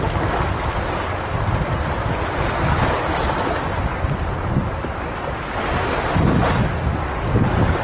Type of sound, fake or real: real